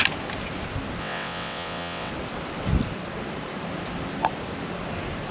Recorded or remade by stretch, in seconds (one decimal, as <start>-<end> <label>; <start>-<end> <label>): 0.0-1.0 recorded; 1.0-2.1 remade; 2.1-5.3 recorded